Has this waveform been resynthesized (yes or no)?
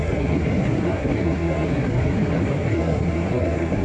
yes